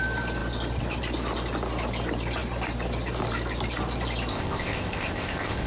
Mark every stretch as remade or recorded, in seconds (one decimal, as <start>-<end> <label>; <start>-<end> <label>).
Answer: 0.0-4.3 recorded; 4.3-5.7 remade